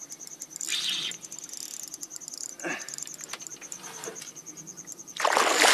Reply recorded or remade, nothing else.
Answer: recorded